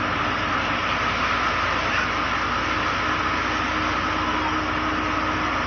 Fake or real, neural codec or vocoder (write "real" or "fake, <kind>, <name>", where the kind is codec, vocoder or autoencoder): real